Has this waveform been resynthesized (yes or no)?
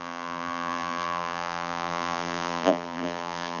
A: yes